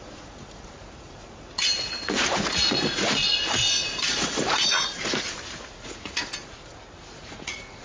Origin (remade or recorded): remade